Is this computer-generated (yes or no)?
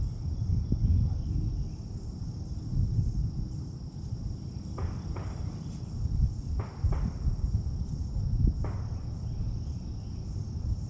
no